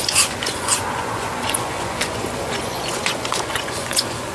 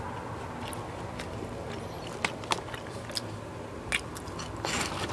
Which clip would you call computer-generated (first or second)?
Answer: first